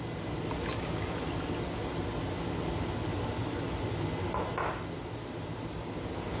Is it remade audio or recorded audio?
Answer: recorded